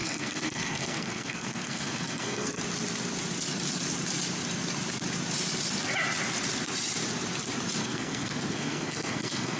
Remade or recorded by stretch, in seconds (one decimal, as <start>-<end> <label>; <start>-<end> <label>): 0.0-2.6 remade; 2.6-7.8 recorded; 7.8-9.6 remade